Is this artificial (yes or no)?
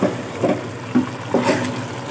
no